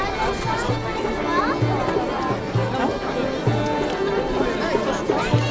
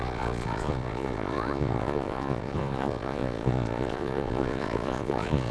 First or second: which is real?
first